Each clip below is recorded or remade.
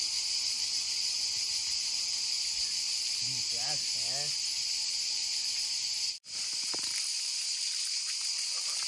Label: recorded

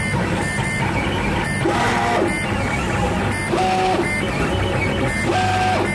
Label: recorded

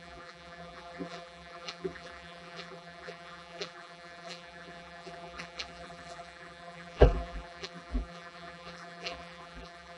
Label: remade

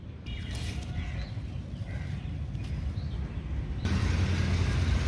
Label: recorded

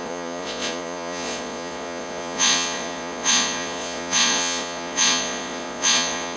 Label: remade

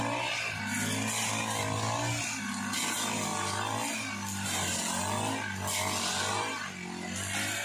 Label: recorded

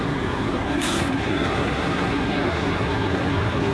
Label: remade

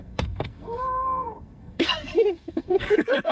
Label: remade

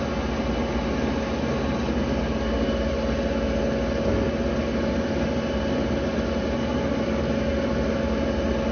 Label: recorded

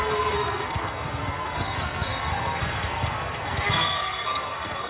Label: remade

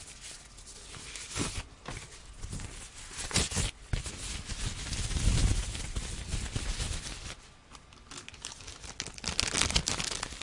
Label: recorded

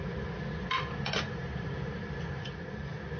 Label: recorded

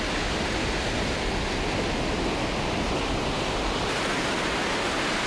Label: recorded